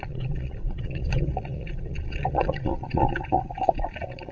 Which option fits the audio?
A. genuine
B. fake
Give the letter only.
B